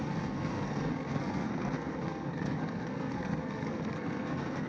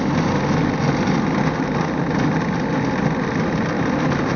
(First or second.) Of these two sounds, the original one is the second